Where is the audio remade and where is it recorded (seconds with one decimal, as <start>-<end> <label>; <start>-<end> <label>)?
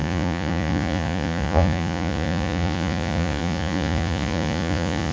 0.0-5.1 remade